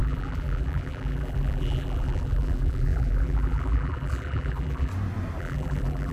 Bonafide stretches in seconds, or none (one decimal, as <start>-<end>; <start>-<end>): 4.9-5.4